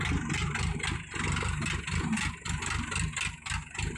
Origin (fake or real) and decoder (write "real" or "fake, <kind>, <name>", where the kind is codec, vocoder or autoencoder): real